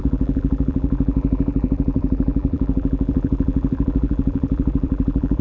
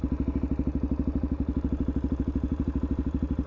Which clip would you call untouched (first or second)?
second